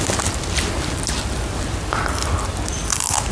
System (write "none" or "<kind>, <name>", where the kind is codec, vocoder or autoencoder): none